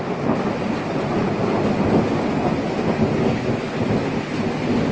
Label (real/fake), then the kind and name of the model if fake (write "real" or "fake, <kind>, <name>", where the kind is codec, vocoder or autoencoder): real